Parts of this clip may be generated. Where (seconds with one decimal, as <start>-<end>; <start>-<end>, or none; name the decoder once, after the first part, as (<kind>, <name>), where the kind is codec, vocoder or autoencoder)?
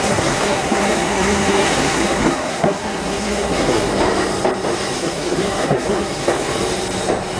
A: 0.0-3.9 (codec, SNAC); 5.0-6.5